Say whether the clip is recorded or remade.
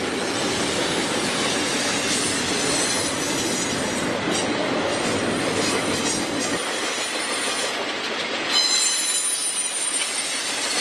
recorded